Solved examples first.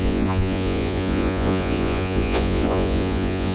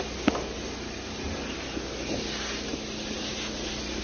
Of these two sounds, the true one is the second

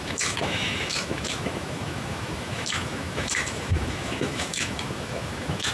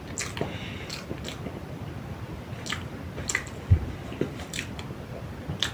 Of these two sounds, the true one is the second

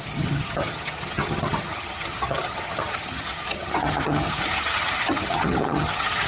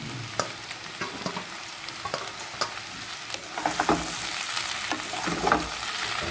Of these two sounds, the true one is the second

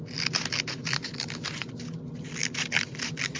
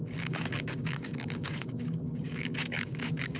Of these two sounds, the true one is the first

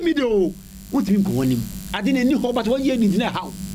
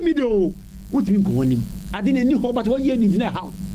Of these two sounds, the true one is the first